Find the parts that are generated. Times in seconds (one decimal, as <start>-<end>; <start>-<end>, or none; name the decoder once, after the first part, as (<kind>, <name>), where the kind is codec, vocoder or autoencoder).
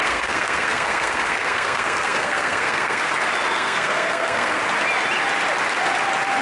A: 0.0-3.1 (codec, SNAC); 3.5-4.6